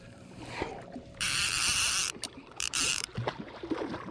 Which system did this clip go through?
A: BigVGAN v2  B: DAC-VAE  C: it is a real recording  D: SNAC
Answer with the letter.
A